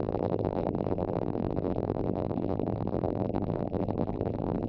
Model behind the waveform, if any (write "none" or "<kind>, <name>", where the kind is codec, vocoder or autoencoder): vocoder, BigVGAN v2